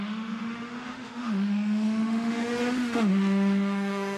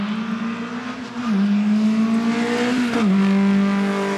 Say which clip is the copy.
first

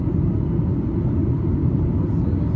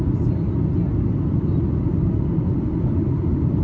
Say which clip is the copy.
second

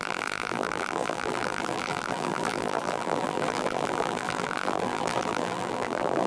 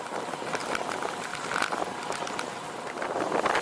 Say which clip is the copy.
first